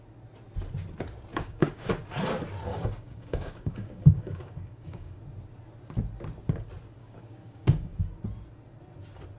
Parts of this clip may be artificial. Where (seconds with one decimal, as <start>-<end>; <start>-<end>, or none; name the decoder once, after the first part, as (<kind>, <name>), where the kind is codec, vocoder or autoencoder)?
1.3-1.9 (codec, DAC); 2.7-5.2; 7.0-8.0